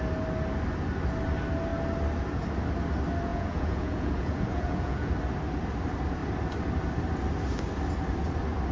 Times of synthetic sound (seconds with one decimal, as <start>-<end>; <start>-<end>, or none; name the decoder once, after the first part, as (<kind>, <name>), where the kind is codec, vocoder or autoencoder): 3.3-5.1 (vocoder, Vocos)